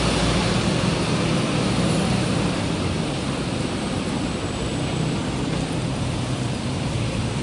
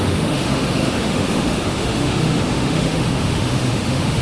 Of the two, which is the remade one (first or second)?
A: second